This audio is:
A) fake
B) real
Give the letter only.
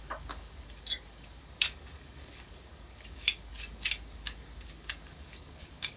A